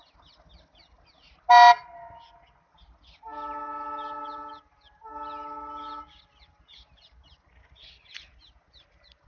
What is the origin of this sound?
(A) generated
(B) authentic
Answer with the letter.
B